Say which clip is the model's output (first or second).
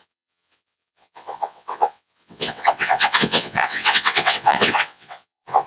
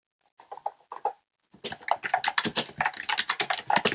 first